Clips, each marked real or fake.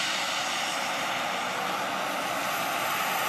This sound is real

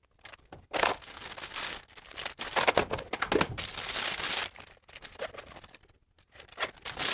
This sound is real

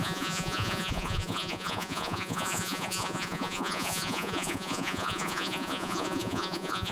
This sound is fake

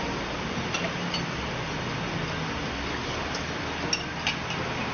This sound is real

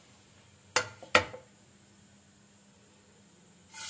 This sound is real